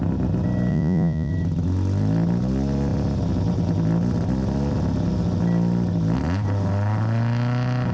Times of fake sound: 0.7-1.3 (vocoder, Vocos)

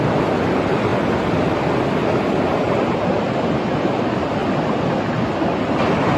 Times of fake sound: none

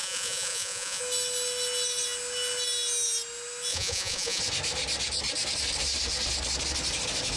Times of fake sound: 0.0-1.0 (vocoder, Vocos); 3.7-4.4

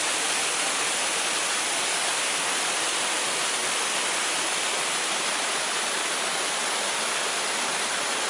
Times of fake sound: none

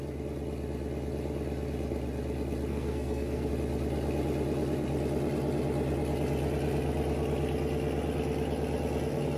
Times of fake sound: 2.7-3.5 (codec, SNAC)